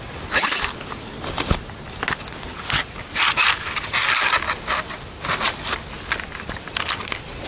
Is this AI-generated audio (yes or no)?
no